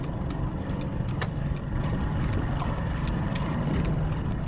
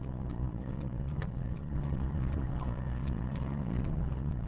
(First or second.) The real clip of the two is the first